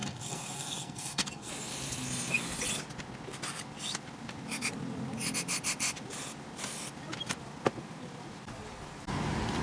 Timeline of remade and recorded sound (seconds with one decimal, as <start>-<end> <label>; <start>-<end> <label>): 0.0-1.5 remade; 1.5-9.6 recorded